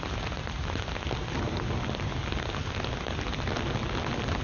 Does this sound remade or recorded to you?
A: recorded